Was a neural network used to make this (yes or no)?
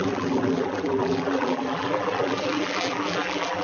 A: yes